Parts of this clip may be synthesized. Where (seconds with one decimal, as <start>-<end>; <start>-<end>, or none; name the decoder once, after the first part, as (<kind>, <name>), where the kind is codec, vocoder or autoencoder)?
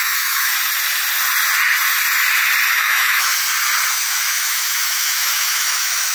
0.0-0.5 (autoencoder, DAC-VAE); 2.7-3.3; 3.9-6.1